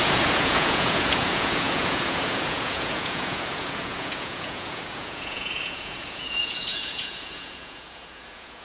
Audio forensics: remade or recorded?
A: remade